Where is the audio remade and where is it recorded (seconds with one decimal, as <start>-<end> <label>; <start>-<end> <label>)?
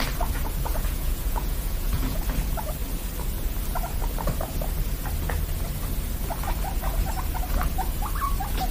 0.0-0.7 recorded; 0.7-2.2 remade; 2.2-8.7 recorded